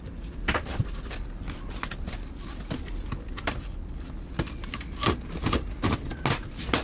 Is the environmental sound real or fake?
real